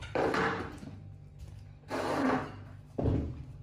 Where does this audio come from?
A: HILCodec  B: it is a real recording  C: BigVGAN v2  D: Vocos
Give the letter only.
B